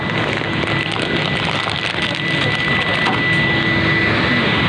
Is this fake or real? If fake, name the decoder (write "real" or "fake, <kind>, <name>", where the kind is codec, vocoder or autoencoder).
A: real